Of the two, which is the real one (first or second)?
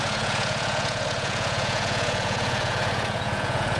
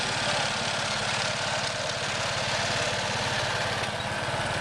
second